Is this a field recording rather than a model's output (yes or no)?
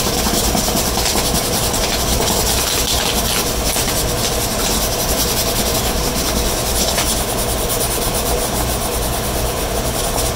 yes